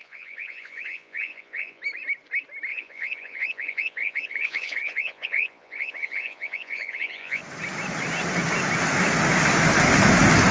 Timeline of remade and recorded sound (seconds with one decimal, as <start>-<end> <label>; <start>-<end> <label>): 0.0-1.8 remade; 1.8-2.7 recorded; 2.7-7.4 remade; 7.4-10.5 recorded